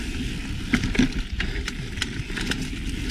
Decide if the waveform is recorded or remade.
recorded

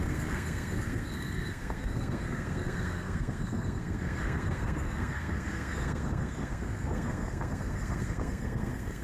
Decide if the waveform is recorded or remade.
remade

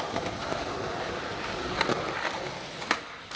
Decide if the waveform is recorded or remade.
recorded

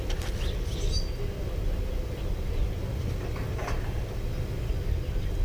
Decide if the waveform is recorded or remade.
recorded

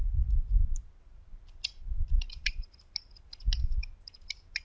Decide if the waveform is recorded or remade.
recorded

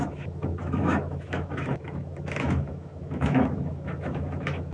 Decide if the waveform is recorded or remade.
remade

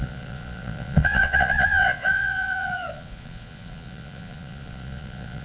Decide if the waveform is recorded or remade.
remade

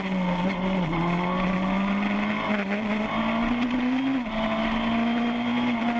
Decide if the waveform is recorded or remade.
recorded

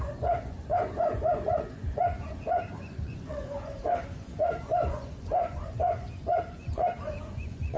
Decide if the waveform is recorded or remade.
remade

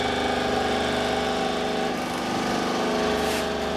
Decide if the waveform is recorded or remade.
recorded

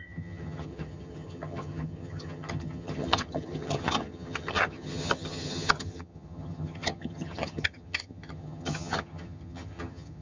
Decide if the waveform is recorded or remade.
remade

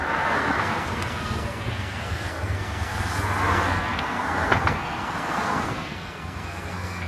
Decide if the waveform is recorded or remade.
remade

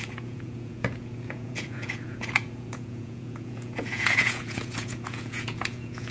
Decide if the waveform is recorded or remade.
remade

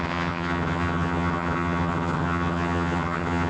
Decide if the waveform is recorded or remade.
remade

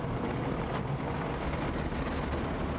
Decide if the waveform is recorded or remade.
recorded